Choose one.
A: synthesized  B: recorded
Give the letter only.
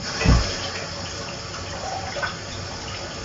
B